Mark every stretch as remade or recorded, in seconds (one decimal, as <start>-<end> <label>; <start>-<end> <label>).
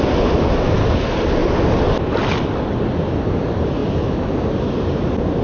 0.0-3.8 recorded; 3.8-4.9 remade; 4.9-5.4 recorded